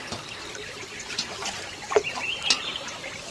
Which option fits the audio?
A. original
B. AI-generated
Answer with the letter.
A